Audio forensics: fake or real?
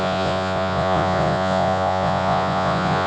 fake